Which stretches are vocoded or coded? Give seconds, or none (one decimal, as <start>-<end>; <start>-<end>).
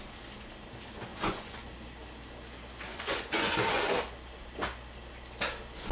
1.1-1.7; 2.9-4.0